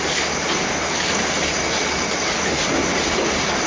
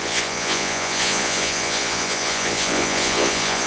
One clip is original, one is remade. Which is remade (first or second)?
second